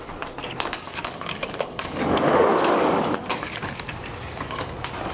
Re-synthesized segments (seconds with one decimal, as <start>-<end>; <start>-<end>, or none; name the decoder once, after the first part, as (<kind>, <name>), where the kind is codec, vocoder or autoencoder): 0.5-3.6 (codec, DAC)